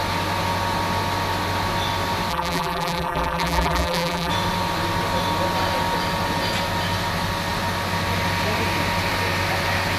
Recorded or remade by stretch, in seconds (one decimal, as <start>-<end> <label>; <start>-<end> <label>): 0.0-2.3 recorded; 2.3-4.3 remade; 4.3-10.0 recorded